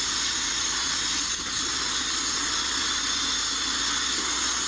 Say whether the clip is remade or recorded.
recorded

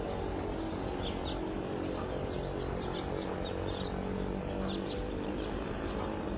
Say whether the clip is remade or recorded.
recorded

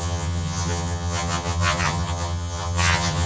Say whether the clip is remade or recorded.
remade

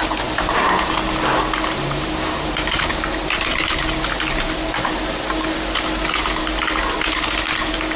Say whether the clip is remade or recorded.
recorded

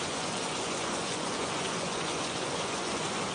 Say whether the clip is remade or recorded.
remade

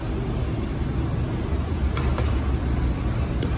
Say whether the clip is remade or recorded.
recorded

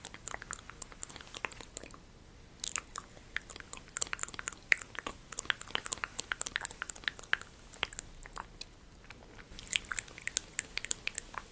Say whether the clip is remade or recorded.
recorded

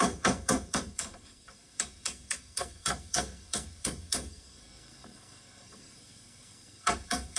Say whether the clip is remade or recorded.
remade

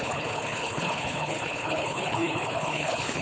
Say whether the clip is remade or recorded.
remade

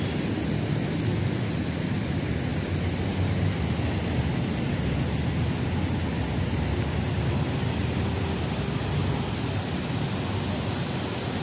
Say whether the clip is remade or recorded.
recorded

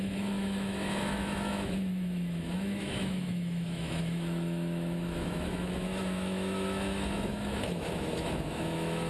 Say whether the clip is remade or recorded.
remade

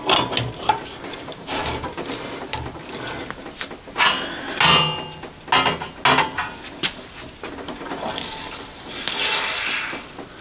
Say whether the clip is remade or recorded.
recorded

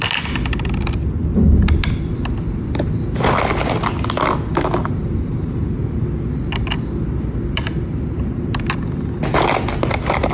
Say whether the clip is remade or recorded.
recorded